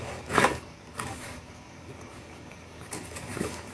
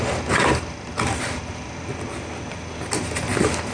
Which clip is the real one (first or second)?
second